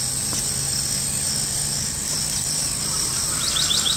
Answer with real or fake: real